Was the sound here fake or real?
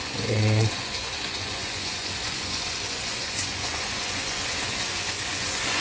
fake